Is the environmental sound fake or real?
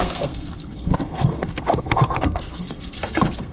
fake